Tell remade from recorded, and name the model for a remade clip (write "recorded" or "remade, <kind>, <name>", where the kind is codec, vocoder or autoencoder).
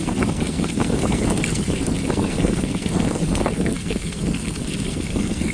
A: remade, codec, SNAC